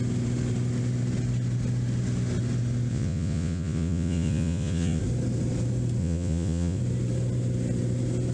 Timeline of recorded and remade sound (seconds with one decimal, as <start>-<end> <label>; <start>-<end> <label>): 0.0-2.9 recorded; 2.9-5.0 remade; 5.0-6.0 recorded; 6.0-6.8 remade; 6.8-8.3 recorded